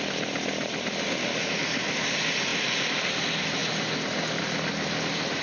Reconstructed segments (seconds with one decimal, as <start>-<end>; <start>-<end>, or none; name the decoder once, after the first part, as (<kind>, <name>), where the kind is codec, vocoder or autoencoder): none